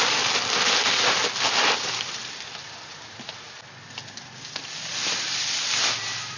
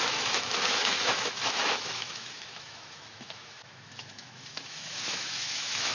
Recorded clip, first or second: first